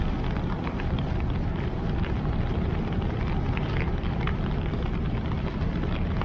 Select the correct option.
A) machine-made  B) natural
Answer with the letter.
A